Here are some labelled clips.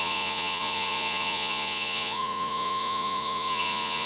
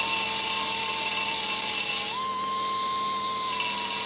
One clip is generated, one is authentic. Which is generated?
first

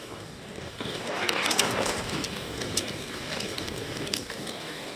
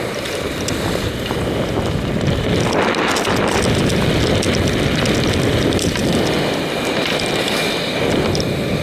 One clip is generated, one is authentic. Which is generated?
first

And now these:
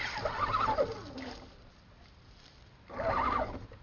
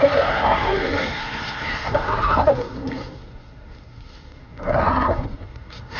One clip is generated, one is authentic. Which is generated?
second